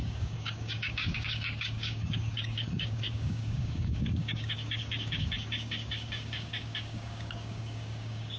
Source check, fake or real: fake